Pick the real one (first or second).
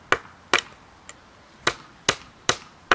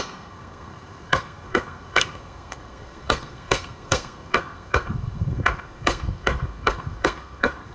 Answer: first